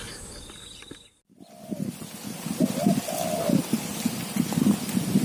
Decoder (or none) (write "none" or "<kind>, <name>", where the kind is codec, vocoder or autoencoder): none